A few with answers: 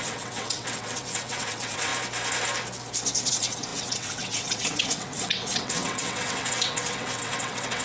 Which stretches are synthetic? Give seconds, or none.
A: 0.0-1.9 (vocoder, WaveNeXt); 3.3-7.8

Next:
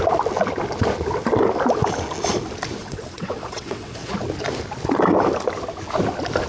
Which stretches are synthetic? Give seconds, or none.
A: 2.8-4.1 (vocoder, WaveNeXt)